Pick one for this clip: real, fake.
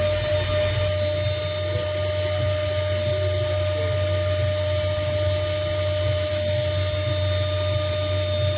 real